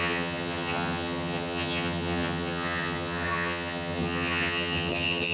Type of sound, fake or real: fake